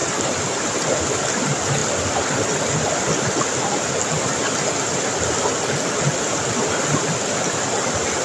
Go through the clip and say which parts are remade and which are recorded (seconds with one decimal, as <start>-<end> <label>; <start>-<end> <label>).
0.0-1.2 remade; 1.2-8.2 recorded